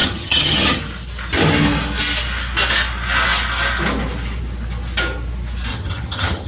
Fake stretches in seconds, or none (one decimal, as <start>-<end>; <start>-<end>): 0.0-0.8; 5.7-6.5